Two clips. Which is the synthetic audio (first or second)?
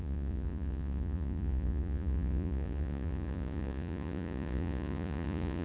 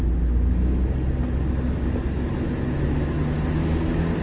first